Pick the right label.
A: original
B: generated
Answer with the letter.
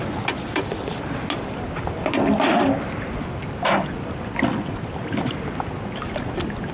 A